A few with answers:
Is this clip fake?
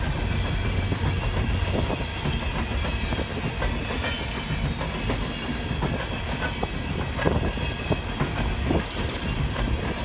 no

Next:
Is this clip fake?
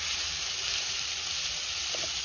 no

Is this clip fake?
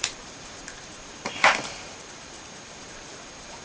yes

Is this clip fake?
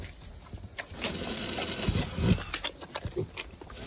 no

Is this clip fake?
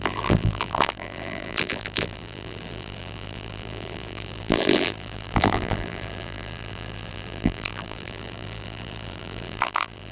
yes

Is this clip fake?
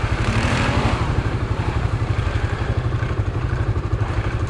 yes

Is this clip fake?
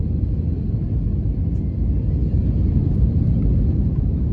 no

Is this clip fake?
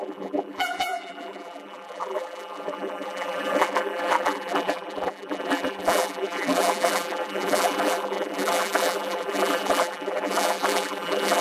yes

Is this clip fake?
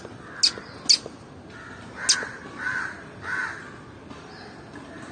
no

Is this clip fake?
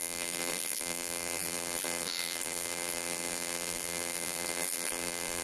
yes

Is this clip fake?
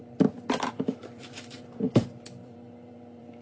yes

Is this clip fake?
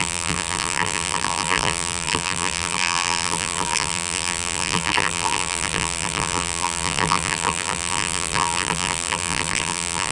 yes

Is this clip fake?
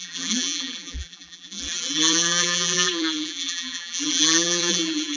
yes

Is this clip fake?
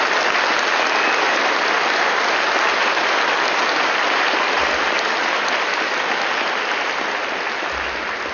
no